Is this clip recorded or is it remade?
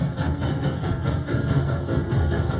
remade